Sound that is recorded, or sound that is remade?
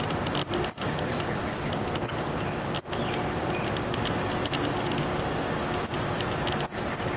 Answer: recorded